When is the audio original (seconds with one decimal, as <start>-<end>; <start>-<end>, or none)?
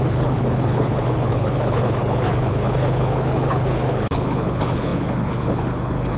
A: none